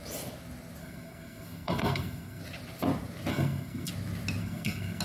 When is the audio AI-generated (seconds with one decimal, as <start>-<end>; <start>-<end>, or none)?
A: 0.8-2.4; 3.3-3.9; 4.4-5.0